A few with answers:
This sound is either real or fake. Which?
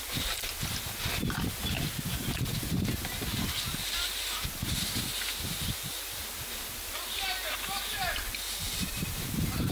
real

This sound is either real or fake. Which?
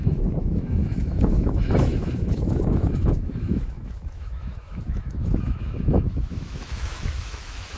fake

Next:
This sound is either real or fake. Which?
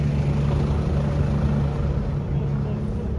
real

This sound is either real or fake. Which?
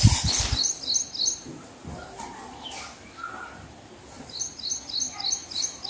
real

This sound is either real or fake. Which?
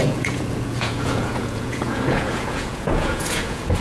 fake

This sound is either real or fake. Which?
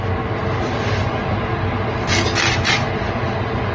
real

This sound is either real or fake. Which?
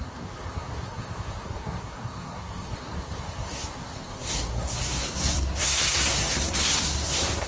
fake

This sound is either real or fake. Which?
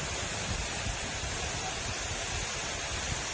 fake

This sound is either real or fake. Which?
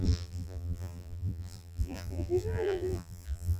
fake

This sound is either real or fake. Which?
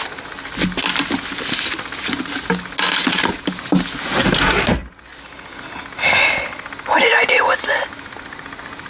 real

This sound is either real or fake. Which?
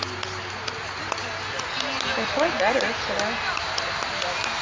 real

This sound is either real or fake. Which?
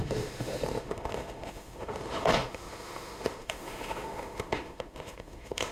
fake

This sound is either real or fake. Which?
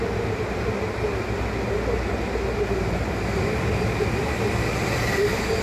real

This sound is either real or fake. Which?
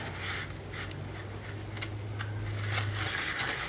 real